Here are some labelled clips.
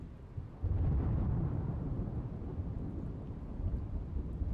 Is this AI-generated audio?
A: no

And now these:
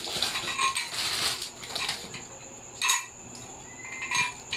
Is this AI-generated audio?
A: no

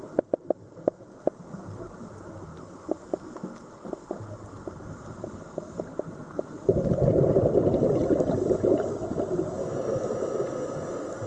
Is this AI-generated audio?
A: no